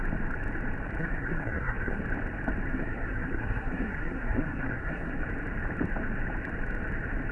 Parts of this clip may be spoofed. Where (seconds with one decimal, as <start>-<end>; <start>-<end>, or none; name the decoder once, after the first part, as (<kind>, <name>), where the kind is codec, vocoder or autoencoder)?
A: 1.0-2.0 (codec, SNAC); 2.7-5.1